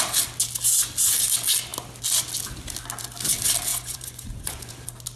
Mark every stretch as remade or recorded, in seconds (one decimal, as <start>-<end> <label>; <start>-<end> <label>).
0.0-3.7 recorded; 3.7-4.7 remade; 4.7-5.2 recorded